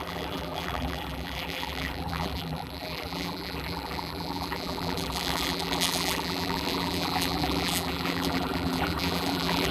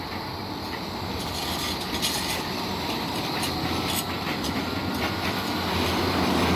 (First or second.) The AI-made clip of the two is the first